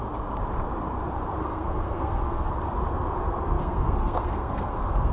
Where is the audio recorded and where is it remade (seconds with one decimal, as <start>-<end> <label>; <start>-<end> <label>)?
0.0-1.4 recorded; 1.4-2.5 remade; 2.5-3.6 recorded; 3.6-5.1 remade